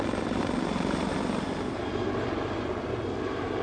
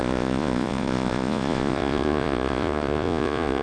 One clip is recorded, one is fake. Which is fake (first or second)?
second